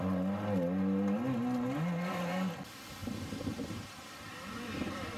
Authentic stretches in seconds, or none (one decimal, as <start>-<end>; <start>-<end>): 0.0-3.0